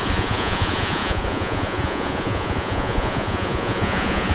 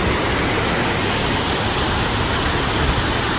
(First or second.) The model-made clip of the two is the first